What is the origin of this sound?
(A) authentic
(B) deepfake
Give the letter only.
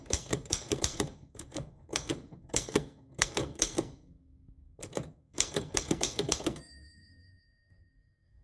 B